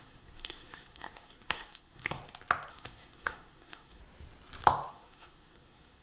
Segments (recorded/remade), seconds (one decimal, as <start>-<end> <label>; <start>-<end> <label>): 0.0-2.2 remade; 2.2-2.7 recorded; 2.7-4.0 remade; 4.0-4.9 recorded; 4.9-6.0 remade